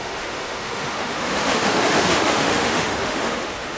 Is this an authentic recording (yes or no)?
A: no